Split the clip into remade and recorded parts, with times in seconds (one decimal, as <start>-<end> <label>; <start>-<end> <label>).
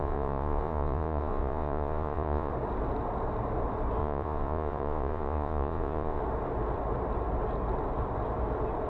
0.0-2.5 remade; 2.5-4.0 recorded; 4.0-6.2 remade; 6.2-8.9 recorded